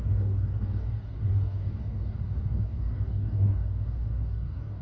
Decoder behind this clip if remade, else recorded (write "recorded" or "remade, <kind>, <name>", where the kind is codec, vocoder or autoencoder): remade, codec, DAC